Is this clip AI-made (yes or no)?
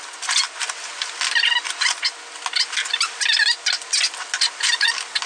no